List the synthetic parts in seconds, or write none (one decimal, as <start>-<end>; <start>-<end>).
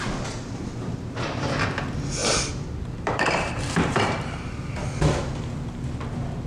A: 2.2-4.5